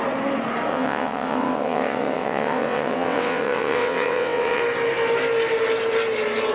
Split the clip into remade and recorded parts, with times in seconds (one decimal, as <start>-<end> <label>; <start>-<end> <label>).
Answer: 0.0-0.7 recorded; 0.7-4.6 remade; 4.6-6.5 recorded